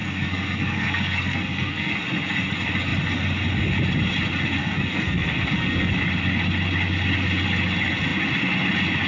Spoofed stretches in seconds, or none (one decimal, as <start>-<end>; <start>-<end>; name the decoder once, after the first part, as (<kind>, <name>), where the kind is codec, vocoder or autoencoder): 0.0-2.0 (codec, SNAC); 4.6-5.9